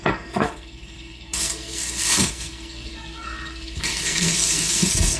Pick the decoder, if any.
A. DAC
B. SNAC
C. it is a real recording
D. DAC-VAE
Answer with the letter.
B